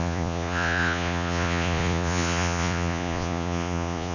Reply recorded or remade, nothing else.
remade